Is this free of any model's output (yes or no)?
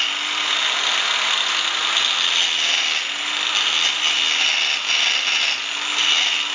yes